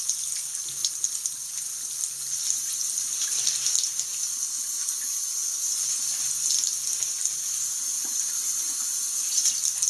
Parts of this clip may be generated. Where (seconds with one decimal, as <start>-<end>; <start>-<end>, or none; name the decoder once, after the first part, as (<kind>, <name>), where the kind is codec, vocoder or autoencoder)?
none